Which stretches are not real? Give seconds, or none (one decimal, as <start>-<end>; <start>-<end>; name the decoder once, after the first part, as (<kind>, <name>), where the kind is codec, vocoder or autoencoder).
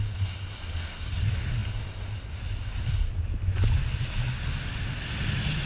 none